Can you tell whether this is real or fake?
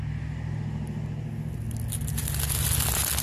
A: real